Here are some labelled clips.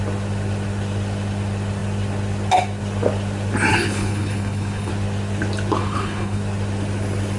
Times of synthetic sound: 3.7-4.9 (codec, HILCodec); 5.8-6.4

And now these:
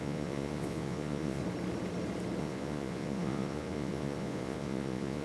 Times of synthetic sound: 0.0-1.4 (vocoder, Vocos); 2.4-5.2

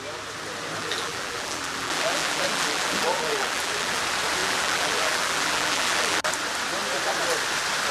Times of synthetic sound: 0.8-4.0 (vocoder, BigVGAN v2); 4.4-6.3

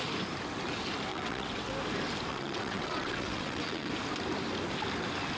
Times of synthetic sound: 1.1-1.7 (vocoder, WaveNeXt); 2.3-3.9

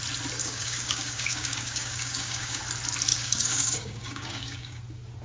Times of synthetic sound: 0.4-2.6 (codec, DAC); 3.1-4.8

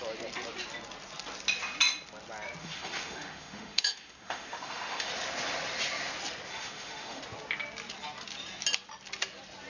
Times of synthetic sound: 2.6-5.1 (autoencoder, DAC-VAE); 6.5-7.2

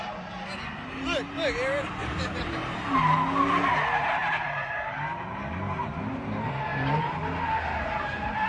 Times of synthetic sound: 2.0-3.0 (vocoder, BigVGAN v2); 4.2-4.9

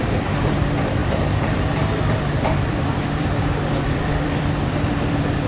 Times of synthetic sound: 0.0-5.5 (vocoder, BigVGAN v2)